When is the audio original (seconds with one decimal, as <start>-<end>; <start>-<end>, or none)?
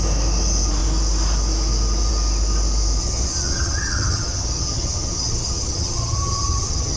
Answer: 0.0-3.0